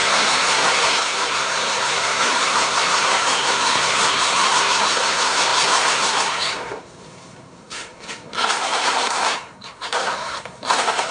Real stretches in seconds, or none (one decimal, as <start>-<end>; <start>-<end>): none